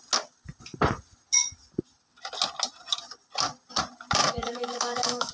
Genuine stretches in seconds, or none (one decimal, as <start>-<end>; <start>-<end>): 0.0-4.2